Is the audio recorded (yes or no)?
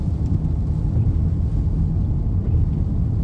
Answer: yes